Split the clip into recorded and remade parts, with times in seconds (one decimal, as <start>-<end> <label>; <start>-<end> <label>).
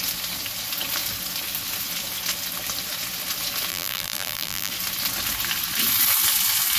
0.0-3.7 recorded; 3.7-4.7 remade; 4.7-6.8 recorded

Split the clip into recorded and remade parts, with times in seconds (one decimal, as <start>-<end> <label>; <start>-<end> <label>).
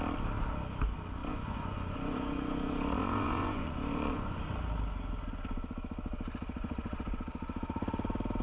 0.0-1.2 recorded; 1.2-4.4 remade; 4.4-6.6 recorded; 6.6-7.1 remade; 7.1-8.4 recorded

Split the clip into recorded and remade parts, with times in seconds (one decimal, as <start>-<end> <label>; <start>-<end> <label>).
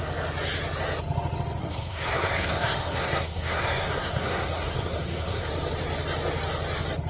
0.0-1.6 recorded; 1.6-5.5 remade; 5.5-7.1 recorded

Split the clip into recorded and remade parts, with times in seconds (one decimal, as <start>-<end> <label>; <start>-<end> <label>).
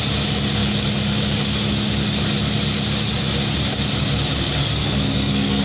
0.0-4.6 recorded; 4.6-5.6 remade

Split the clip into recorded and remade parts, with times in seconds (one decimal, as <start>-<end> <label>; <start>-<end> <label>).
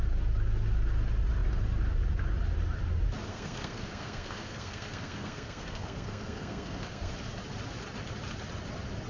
0.0-3.3 recorded; 3.3-7.1 remade; 7.1-9.1 recorded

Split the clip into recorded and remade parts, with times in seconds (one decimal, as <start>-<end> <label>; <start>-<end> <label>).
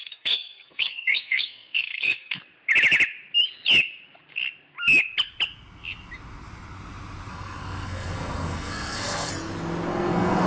0.0-2.4 remade; 2.4-7.3 recorded; 7.3-9.3 remade; 9.3-9.9 recorded; 9.9-10.5 remade